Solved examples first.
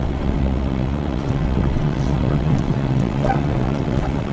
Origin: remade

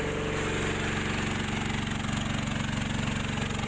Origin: recorded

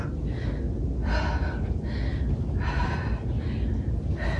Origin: recorded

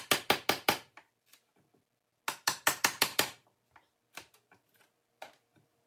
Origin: recorded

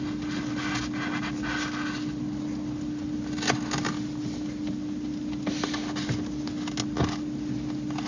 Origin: recorded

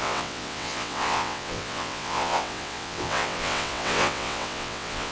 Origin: remade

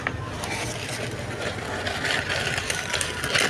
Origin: recorded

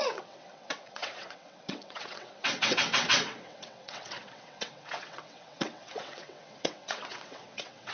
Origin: remade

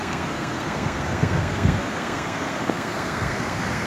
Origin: remade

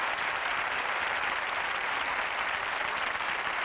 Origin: remade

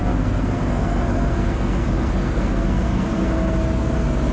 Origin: remade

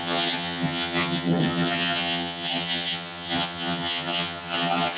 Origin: remade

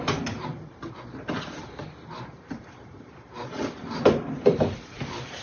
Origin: remade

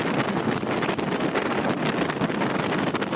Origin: recorded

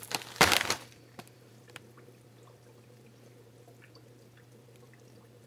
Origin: remade